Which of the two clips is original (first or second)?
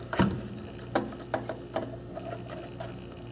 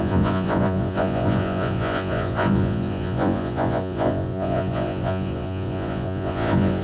first